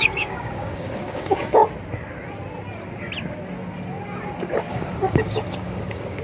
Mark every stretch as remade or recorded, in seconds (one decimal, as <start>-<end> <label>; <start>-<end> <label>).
0.0-1.6 remade; 1.6-4.7 recorded; 4.7-6.2 remade